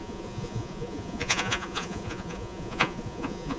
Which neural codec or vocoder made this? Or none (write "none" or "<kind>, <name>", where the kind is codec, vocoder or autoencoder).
vocoder, Vocos